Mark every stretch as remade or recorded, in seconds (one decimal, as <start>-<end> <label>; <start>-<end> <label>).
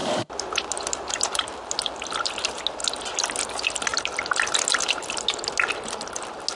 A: 0.0-6.5 recorded